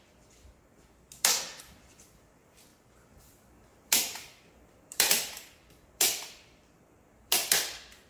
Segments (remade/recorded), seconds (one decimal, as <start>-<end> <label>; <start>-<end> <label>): 0.0-2.7 remade; 2.7-3.2 recorded; 3.2-8.1 remade